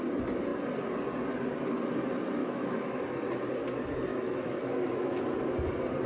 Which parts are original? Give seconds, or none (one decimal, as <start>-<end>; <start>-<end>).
0.0-2.4; 3.0-4.1; 5.2-6.1